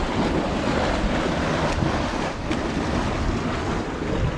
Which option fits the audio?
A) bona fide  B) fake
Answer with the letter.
A